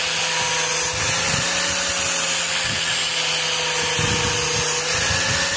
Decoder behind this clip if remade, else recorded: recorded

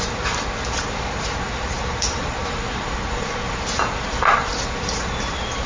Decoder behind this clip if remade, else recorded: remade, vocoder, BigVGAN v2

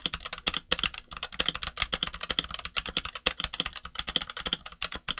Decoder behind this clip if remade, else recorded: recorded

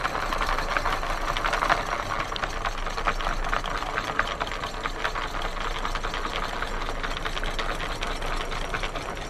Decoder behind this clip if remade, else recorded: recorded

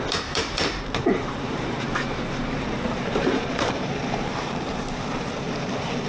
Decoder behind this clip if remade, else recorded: remade, vocoder, BigVGAN v2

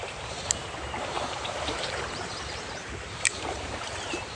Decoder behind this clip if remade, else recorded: remade, vocoder, BigVGAN v2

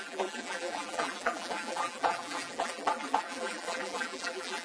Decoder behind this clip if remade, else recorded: remade, vocoder, BigVGAN v2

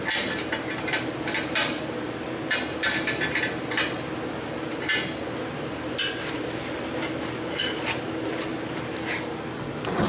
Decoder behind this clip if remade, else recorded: recorded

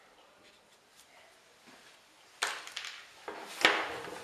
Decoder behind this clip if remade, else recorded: recorded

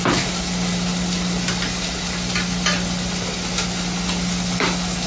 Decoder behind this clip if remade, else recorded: recorded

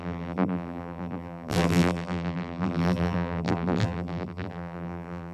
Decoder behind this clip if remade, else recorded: remade, vocoder, BigVGAN v2